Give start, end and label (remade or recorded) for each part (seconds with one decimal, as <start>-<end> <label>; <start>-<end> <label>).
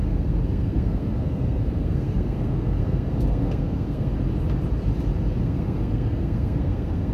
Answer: 0.0-4.1 remade; 4.1-5.4 recorded; 5.4-7.1 remade